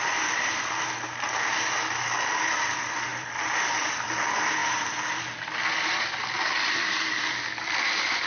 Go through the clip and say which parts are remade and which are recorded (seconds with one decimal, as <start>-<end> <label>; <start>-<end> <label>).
0.0-3.1 recorded; 3.1-4.1 remade; 4.1-8.3 recorded